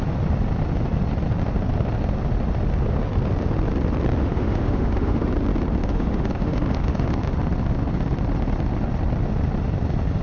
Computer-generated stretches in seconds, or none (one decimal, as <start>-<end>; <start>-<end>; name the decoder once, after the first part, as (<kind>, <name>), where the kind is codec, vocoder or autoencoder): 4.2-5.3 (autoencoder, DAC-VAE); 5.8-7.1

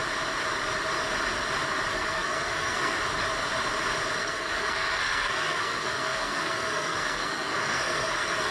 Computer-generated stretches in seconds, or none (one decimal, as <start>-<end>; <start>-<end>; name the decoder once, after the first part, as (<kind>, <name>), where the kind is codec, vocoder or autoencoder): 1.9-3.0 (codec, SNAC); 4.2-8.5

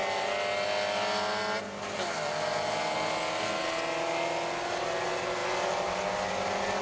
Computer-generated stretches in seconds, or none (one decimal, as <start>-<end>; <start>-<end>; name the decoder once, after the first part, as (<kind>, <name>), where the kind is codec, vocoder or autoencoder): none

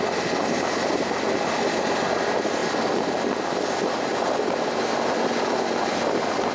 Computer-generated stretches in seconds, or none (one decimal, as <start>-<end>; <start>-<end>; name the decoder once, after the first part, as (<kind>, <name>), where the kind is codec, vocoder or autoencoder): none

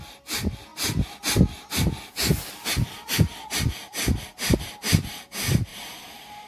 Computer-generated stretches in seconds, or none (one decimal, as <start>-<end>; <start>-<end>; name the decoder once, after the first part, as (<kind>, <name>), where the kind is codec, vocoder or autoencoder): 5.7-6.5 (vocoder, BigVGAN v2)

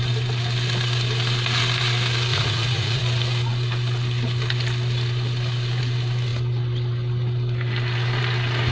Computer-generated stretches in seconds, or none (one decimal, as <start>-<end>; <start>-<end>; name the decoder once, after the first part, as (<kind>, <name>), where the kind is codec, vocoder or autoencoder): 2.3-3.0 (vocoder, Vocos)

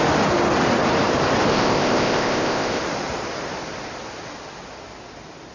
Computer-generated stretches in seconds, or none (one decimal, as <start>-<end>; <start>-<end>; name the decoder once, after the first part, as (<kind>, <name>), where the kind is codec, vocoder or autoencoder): 1.5-2.8 (codec, ZipCodec)